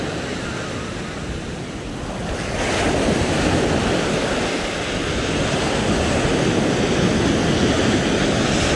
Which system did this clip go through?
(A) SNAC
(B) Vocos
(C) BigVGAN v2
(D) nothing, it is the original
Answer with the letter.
D